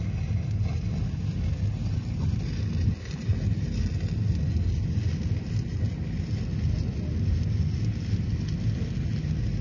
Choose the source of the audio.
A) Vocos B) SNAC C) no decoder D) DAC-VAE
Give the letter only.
C